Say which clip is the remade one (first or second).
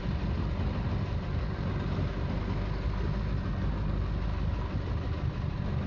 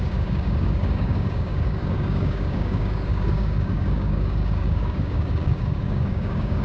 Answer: second